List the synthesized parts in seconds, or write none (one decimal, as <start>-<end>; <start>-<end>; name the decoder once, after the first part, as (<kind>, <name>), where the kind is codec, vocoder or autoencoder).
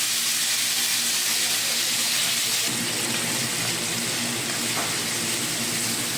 none